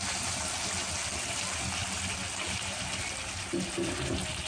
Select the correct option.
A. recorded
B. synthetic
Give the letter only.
A